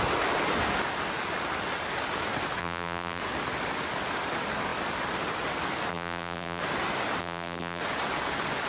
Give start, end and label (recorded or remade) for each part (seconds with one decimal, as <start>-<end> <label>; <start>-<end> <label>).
0.0-2.6 recorded; 2.6-3.2 remade; 3.2-5.9 recorded; 5.9-6.6 remade; 6.6-7.2 recorded; 7.2-7.8 remade; 7.8-8.7 recorded